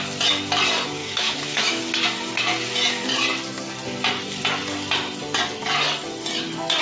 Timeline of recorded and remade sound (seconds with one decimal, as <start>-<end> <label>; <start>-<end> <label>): 0.0-1.0 recorded; 1.0-1.8 remade; 1.8-6.8 recorded